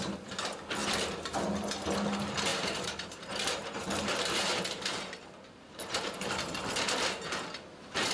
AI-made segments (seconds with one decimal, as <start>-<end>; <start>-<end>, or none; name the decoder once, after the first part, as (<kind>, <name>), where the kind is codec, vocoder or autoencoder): 0.8-1.4 (vocoder, BigVGAN v2); 2.5-6.7